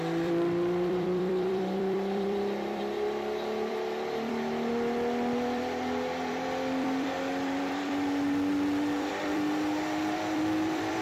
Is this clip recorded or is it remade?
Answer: remade